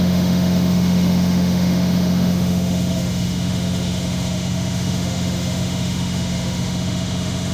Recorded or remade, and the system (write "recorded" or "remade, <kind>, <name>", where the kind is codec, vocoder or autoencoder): remade, autoencoder, DAC-VAE